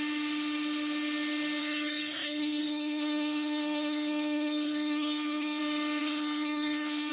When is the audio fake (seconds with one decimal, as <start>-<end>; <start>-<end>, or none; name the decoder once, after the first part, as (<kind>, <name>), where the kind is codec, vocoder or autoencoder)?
1.6-5.6 (codec, SNAC); 6.0-7.1